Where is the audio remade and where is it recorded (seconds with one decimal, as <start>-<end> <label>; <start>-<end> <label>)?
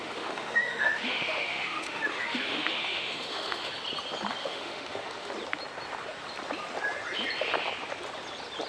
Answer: 0.0-3.7 remade; 3.7-4.4 recorded; 4.4-5.3 remade; 5.3-8.7 recorded